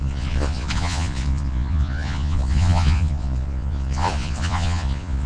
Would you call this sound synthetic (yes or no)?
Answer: yes